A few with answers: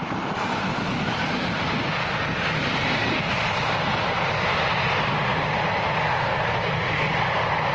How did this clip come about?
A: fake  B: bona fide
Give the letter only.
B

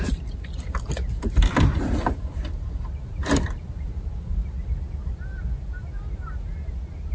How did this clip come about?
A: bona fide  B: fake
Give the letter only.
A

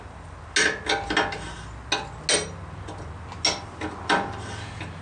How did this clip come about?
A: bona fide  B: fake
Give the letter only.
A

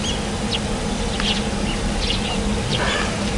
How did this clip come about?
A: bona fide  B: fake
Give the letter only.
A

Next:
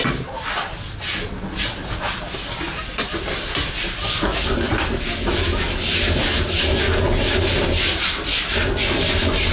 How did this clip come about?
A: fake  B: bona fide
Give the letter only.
B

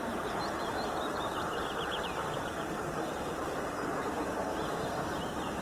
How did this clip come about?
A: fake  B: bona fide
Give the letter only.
A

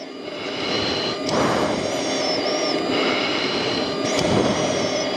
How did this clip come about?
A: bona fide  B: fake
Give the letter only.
A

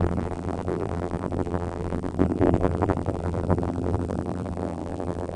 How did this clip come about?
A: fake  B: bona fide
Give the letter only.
A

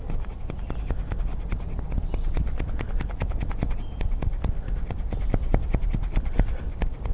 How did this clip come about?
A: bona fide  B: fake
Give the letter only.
A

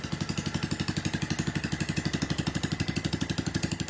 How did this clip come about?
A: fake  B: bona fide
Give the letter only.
B